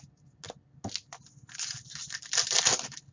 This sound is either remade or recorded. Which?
recorded